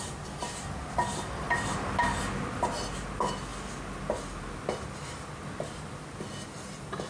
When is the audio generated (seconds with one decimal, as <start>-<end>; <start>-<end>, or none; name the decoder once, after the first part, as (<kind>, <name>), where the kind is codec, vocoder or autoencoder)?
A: 0.0-2.1 (vocoder, BigVGAN v2); 2.6-3.5; 5.4-7.1